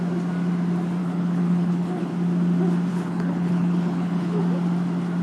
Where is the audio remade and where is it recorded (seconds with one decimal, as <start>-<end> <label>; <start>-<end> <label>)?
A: 0.0-1.0 recorded; 1.0-2.1 remade; 2.1-2.9 recorded; 2.9-4.4 remade; 4.4-5.2 recorded